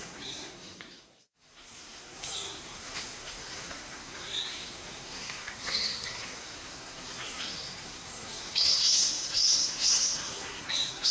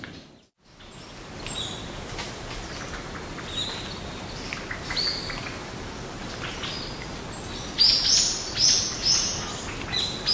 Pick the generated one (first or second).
first